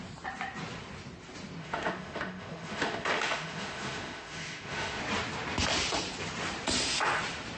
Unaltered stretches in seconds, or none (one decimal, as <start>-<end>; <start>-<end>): 0.0-1.6; 5.0-7.6